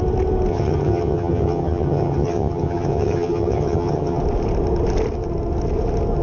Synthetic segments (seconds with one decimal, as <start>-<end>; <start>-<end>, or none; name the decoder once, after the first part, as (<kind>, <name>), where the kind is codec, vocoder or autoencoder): 0.5-4.2 (vocoder, HiFi-GAN)

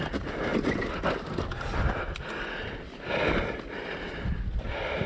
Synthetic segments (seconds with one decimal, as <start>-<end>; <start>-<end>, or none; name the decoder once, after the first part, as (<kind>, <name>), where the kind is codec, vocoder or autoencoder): none

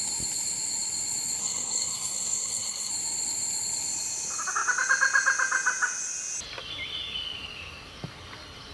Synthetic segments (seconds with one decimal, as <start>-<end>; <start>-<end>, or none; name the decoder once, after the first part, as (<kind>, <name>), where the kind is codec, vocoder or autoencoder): 1.4-2.9 (codec, SNAC)

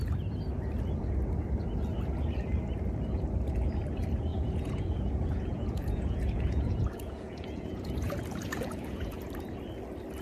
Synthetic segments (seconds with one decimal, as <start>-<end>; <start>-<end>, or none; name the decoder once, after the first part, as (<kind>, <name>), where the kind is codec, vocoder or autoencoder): 4.3-9.3 (vocoder, Vocos)